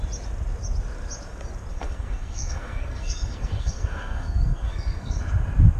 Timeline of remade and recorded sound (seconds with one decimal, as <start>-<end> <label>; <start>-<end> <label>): 0.0-1.7 recorded; 1.7-5.2 remade; 5.2-5.8 recorded